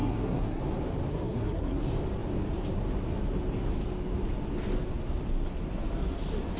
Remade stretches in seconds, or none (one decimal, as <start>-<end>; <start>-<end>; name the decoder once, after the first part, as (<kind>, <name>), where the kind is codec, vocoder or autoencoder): 0.0-0.6 (codec, SNAC); 1.1-1.8